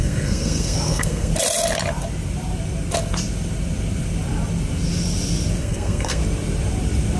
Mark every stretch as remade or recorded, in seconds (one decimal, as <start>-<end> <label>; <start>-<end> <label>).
0.0-1.3 remade; 1.3-5.6 recorded; 5.6-6.2 remade; 6.2-7.2 recorded